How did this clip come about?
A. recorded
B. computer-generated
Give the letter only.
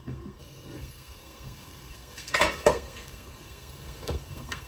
B